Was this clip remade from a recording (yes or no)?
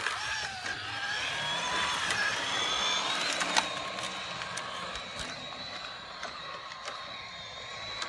no